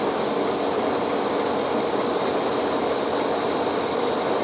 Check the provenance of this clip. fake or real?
real